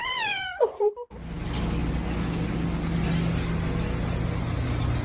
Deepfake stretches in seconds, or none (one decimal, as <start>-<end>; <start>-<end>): 0.0-0.9

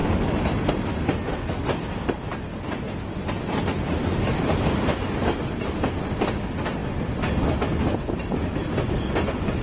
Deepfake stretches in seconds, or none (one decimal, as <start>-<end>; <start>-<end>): none

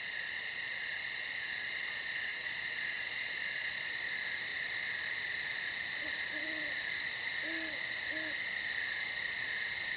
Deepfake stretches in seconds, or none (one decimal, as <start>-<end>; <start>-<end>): 2.3-4.1

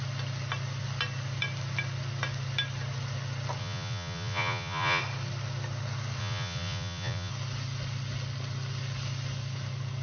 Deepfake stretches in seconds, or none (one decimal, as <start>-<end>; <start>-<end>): 3.6-5.0; 6.2-7.3

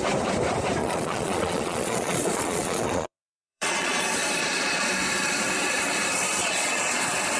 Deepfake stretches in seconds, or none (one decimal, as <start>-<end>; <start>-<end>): 0.8-4.0; 4.4-4.9; 6.4-7.0

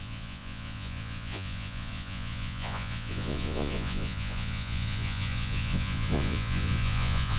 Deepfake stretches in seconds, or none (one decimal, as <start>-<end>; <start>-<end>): 0.0-7.4